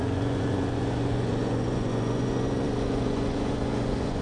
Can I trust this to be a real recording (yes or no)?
no